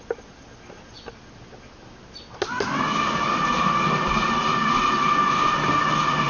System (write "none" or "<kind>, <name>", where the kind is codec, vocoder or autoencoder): none